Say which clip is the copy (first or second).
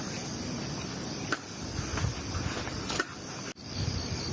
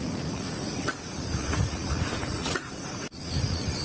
second